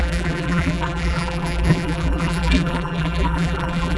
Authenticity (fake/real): fake